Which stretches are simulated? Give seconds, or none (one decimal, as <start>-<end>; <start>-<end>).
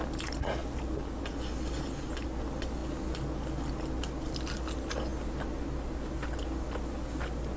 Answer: none